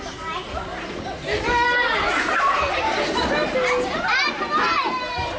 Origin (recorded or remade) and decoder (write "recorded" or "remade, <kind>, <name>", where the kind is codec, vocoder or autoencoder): recorded